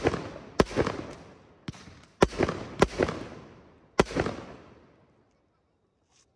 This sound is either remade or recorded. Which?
recorded